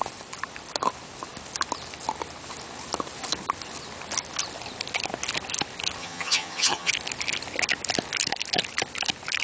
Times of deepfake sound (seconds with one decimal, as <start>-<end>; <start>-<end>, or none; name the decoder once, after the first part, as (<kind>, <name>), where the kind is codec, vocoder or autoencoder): 6.0-6.9 (vocoder, HiFi-GAN)